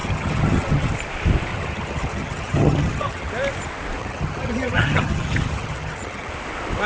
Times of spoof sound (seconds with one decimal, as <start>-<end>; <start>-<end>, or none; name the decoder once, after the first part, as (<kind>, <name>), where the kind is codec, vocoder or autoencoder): 0.0-0.9 (vocoder, HiFi-GAN); 1.5-3.3; 4.0-6.3